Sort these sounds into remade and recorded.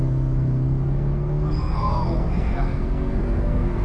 remade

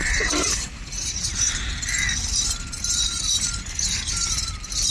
remade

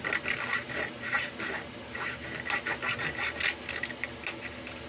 recorded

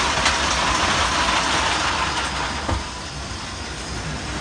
recorded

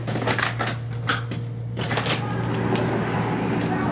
recorded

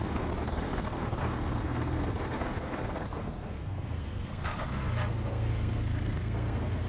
remade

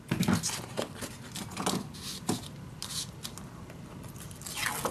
recorded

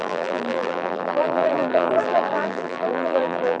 remade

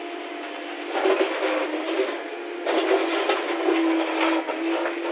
recorded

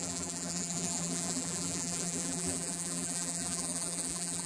remade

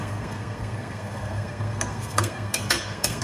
remade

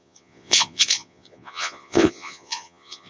remade